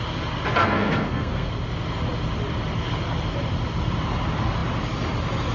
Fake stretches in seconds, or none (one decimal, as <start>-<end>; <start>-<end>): 0.6-1.5